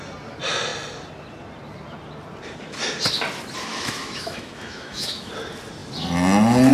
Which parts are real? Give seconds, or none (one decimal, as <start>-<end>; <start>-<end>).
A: 0.0-3.7; 5.3-6.7